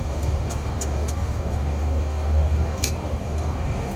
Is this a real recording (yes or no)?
no